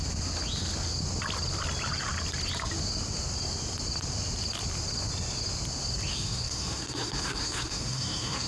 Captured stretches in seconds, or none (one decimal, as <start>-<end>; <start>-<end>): 0.0-6.1